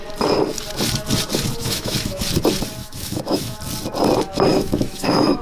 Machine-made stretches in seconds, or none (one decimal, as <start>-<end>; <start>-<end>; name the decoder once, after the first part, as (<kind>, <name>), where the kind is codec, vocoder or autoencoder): 1.6-2.2 (autoencoder, DAC-VAE); 2.8-3.6; 4.5-5.4